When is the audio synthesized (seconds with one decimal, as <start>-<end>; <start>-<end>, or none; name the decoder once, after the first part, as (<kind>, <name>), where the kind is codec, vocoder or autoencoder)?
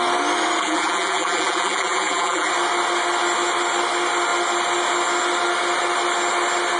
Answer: 0.6-2.5 (vocoder, BigVGAN v2)